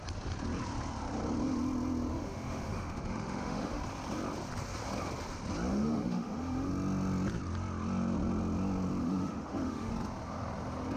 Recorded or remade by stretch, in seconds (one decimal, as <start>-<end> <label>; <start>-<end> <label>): 0.0-2.1 recorded; 2.1-3.8 remade; 3.8-5.7 recorded; 5.7-6.7 remade; 6.7-9.0 recorded; 9.0-9.9 remade; 9.9-11.0 recorded